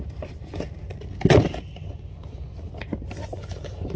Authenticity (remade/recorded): recorded